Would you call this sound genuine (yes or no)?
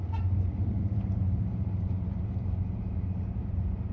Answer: no